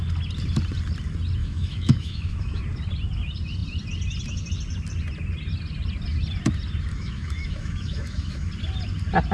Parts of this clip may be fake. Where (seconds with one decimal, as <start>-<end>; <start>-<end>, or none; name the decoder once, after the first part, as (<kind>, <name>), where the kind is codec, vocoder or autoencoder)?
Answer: 1.4-2.6 (autoencoder, DAC-VAE); 6.9-8.5